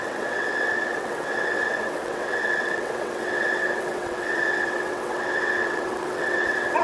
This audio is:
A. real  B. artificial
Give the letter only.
B